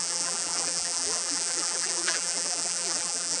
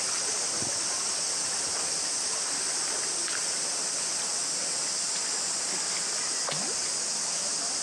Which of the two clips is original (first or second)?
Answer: second